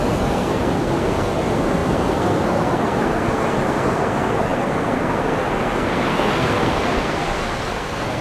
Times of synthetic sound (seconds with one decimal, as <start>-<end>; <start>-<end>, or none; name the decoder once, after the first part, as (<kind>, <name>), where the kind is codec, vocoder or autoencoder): 0.0-8.2 (codec, SNAC)